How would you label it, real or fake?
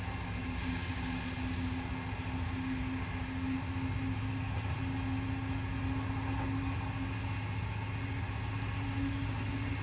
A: real